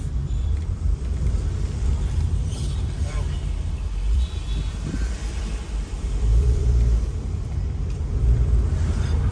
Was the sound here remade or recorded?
remade